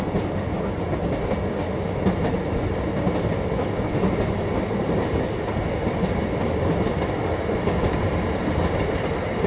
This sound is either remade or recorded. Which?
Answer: recorded